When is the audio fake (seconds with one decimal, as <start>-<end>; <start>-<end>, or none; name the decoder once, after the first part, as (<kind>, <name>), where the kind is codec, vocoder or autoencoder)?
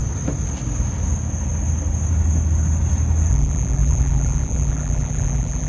3.3-5.7 (vocoder, BigVGAN v2)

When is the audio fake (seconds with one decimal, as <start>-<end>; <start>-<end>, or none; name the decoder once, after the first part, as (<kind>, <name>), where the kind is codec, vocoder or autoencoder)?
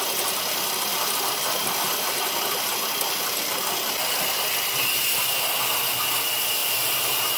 6.6-7.4 (vocoder, BigVGAN v2)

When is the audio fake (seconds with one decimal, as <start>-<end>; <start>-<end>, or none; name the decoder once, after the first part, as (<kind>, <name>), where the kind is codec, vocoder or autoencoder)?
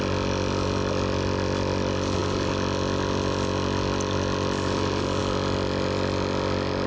none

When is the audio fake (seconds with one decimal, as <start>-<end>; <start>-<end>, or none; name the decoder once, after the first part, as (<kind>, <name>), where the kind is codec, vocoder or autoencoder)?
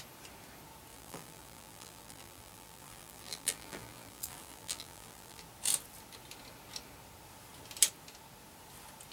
0.9-5.4 (vocoder, BigVGAN v2)